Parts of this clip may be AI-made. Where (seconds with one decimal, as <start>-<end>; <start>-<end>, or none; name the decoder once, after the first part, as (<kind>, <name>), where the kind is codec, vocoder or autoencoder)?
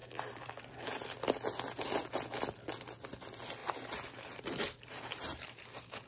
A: 3.6-6.1 (vocoder, BigVGAN v2)